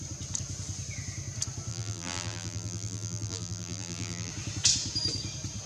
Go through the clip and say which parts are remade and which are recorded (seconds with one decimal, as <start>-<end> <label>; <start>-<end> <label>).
0.0-1.7 recorded; 1.7-4.3 remade; 4.3-5.7 recorded